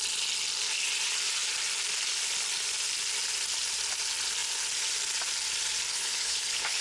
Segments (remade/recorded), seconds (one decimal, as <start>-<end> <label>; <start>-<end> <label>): 0.0-5.9 recorded; 5.9-6.8 remade